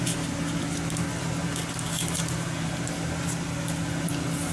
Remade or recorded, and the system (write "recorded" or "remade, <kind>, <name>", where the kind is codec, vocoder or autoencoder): recorded